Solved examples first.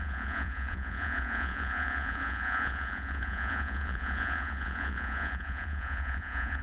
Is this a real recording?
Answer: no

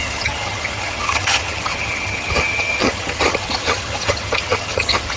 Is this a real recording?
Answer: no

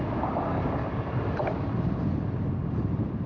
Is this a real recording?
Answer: yes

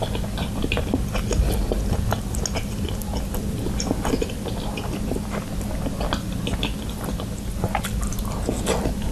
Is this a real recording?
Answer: yes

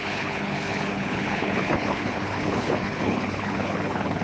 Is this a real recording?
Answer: no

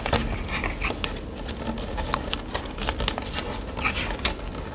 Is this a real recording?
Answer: yes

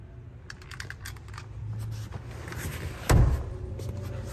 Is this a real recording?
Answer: yes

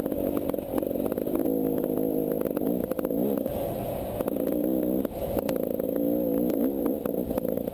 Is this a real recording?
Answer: yes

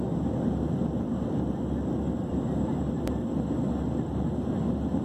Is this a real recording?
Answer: yes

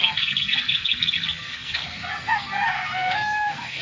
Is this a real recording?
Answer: no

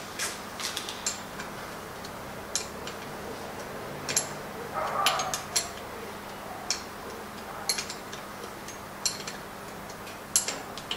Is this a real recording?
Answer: yes